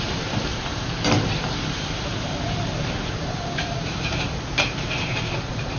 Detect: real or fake fake